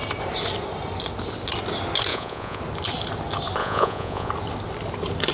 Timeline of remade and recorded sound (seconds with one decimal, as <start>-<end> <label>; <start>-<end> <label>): 0.0-2.1 recorded; 2.1-2.6 remade; 2.6-3.6 recorded; 3.6-4.3 remade; 4.3-5.3 recorded